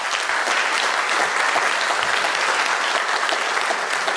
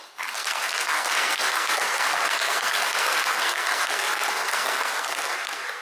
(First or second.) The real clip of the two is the first